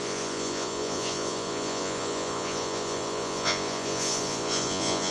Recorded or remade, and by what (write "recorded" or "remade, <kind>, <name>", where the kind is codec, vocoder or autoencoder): remade, vocoder, Vocos